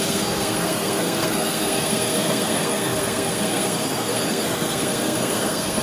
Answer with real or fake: fake